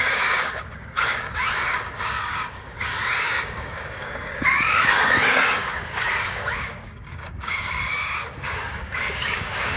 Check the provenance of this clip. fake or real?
fake